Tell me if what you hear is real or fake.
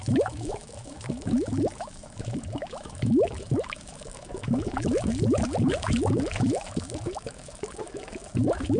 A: fake